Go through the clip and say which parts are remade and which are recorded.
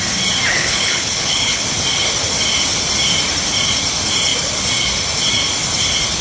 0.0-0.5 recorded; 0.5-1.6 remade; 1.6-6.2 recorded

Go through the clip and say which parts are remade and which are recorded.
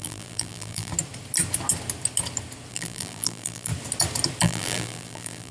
0.0-0.9 remade; 0.9-2.7 recorded; 2.7-3.7 remade; 3.7-4.4 recorded; 4.4-5.5 remade